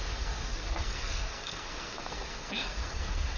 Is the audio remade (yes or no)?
yes